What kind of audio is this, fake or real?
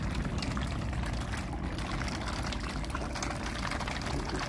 real